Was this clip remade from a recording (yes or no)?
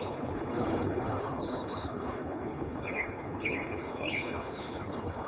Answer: yes